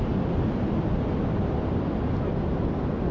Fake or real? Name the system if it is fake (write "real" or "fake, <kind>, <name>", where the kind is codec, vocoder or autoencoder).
real